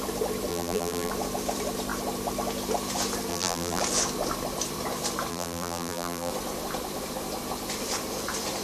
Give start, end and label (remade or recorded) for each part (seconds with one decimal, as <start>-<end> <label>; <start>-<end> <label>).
0.0-0.5 recorded; 0.5-1.1 remade; 1.1-3.3 recorded; 3.3-3.8 remade; 3.8-5.3 recorded; 5.3-6.3 remade; 6.3-8.6 recorded